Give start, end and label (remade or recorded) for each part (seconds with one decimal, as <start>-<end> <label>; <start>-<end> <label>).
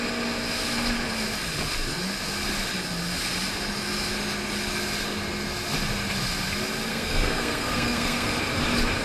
0.0-6.9 recorded; 6.9-8.3 remade; 8.3-9.0 recorded